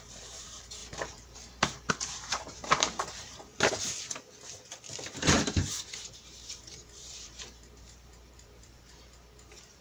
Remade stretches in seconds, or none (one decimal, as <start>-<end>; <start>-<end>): 0.0-3.5; 4.9-9.8